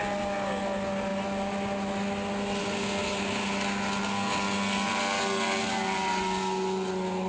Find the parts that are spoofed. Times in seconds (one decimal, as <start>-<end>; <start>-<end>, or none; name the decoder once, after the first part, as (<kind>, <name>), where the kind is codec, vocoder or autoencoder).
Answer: none